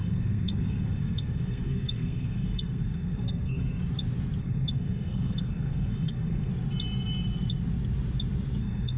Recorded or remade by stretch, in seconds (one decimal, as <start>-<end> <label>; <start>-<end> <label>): 0.0-3.8 remade; 3.8-4.4 recorded; 4.4-6.5 remade; 6.5-8.6 recorded; 8.6-9.0 remade